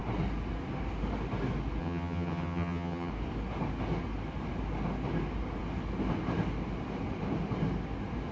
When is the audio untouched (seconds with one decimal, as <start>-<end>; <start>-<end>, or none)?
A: 0.0-1.8; 3.1-8.3